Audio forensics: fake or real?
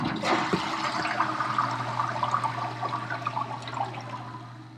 real